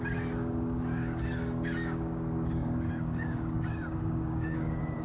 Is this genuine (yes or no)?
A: no